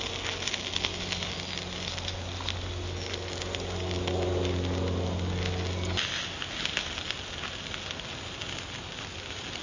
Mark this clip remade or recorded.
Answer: recorded